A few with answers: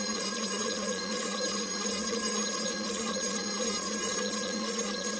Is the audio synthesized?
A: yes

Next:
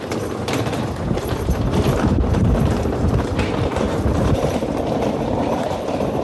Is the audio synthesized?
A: yes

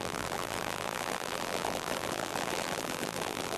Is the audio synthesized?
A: yes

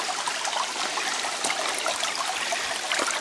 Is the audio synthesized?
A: no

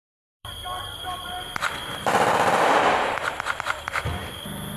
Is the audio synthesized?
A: yes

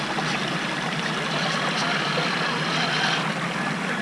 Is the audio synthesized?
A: no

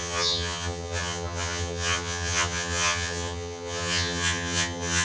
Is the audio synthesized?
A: yes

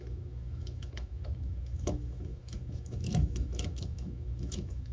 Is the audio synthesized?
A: yes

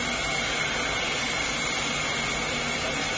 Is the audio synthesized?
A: no